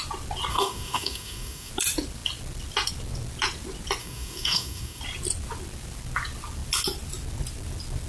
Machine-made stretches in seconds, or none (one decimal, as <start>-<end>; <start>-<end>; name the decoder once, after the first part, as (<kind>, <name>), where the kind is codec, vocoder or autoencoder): 0.5-1.7 (codec, DAC); 4.0-5.0